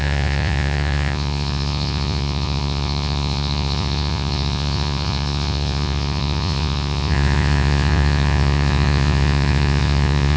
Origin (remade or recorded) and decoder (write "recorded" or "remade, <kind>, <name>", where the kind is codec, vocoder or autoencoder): remade, vocoder, Vocos